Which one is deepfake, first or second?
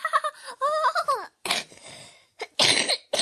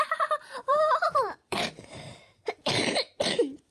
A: second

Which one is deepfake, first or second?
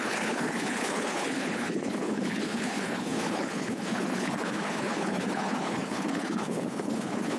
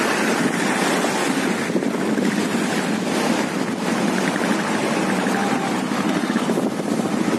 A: first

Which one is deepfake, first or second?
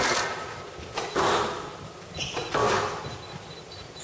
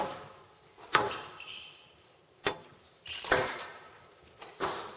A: second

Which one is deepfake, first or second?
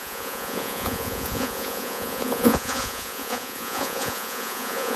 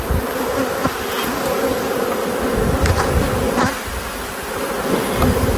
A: first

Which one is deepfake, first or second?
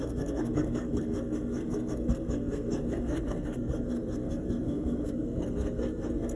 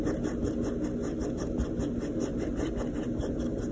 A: first